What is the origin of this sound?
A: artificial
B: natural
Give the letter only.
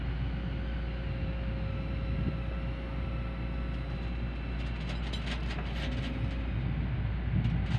B